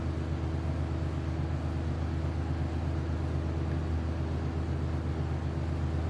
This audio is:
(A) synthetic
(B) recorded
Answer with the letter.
B